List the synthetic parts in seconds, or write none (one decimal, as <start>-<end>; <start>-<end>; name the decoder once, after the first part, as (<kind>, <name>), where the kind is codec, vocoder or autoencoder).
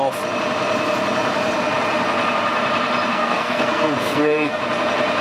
3.1-4.6 (codec, SNAC)